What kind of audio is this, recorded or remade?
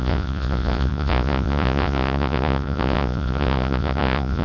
remade